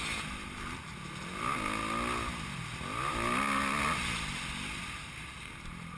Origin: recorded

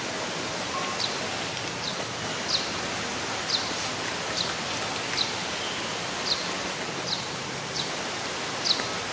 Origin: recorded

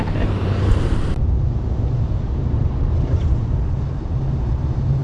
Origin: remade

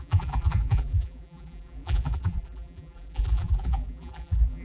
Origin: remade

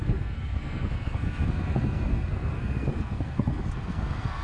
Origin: remade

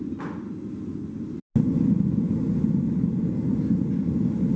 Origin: recorded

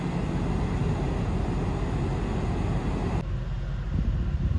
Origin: recorded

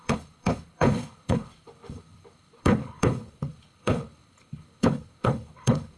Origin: remade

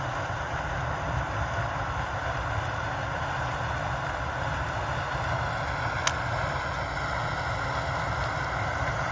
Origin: recorded